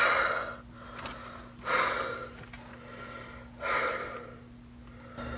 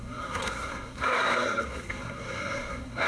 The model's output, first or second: second